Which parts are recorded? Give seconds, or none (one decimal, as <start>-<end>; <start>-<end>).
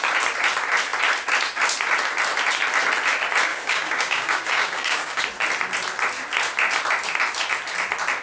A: 0.0-3.5; 5.2-8.2